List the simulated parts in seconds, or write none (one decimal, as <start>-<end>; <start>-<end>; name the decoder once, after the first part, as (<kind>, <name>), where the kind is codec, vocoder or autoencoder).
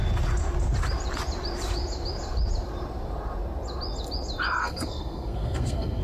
4.6-6.0 (codec, SNAC)